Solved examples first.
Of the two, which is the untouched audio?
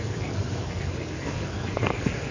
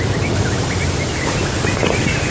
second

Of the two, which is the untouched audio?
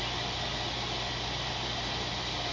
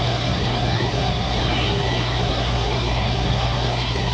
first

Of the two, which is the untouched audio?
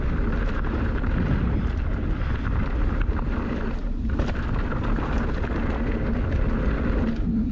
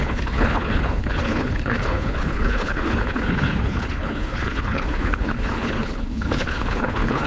first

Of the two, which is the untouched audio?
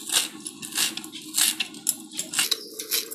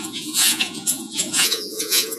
first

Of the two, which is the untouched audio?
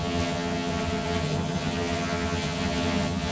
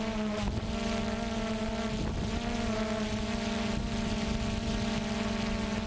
second